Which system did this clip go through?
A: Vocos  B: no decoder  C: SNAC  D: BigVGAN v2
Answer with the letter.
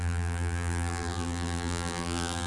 D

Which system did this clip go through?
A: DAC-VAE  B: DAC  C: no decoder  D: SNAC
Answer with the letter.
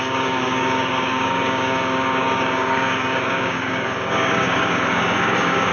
B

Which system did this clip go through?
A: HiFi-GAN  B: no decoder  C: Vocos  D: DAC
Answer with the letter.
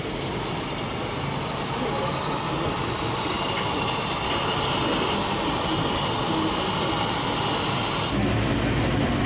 B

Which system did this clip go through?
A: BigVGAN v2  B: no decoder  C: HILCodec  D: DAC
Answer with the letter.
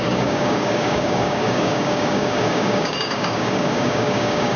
D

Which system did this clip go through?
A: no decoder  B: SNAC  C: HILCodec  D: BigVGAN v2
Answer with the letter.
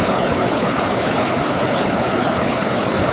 C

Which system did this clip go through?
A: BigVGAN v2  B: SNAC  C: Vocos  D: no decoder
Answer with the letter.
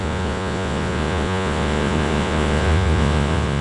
C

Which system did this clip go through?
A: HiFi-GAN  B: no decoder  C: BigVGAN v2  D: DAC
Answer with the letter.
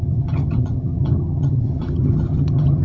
A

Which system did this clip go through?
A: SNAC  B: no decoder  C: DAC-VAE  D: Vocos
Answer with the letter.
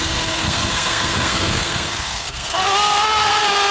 A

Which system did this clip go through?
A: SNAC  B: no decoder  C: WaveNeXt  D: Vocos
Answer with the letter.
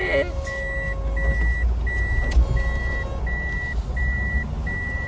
B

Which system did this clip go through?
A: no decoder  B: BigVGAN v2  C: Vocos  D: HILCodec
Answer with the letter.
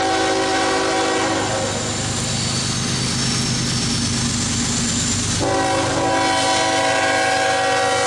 A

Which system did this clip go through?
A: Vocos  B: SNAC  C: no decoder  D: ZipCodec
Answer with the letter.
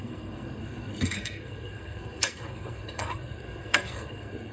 B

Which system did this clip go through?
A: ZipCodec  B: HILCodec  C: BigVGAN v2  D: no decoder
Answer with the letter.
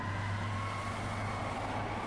D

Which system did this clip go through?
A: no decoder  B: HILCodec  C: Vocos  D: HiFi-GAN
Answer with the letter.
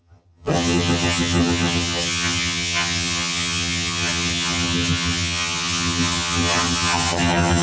D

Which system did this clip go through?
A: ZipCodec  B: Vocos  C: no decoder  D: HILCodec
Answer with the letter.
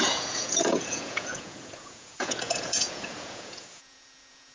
B